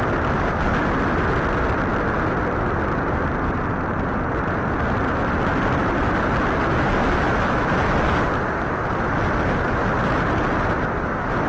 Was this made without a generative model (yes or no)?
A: yes